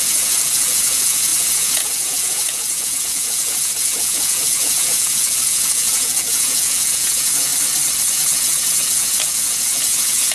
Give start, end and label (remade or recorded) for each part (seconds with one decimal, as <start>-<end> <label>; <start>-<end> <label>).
0.0-7.5 remade; 7.5-8.1 recorded; 8.1-10.3 remade